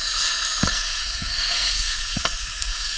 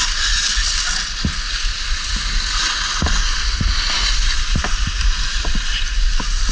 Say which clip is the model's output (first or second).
first